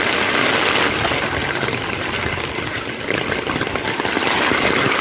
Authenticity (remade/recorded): recorded